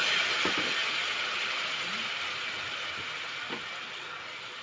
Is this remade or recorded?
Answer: recorded